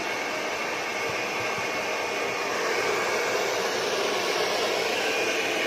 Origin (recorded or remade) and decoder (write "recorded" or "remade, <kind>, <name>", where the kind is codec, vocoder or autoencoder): recorded